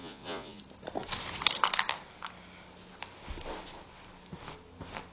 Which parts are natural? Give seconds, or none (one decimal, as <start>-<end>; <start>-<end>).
0.6-5.1

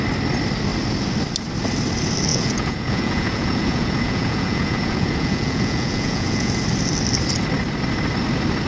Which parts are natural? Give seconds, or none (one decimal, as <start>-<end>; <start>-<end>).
0.0-2.3; 6.5-8.7

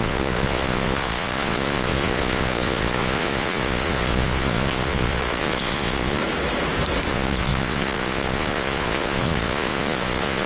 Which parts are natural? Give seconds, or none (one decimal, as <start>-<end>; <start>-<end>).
6.2-7.1

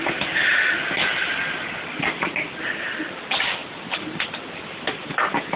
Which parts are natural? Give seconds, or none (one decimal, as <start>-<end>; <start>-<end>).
0.0-5.6

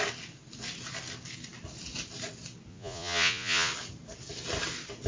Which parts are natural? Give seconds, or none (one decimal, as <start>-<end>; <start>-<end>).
0.0-2.7; 3.7-5.1